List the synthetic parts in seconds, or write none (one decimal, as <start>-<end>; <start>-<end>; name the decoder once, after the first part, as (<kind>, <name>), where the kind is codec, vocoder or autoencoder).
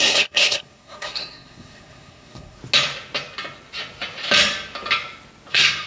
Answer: 0.0-2.6 (codec, SNAC); 5.5-5.9